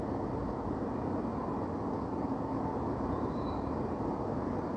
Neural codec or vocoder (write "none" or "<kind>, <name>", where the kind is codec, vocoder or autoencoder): none